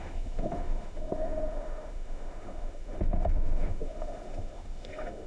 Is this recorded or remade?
remade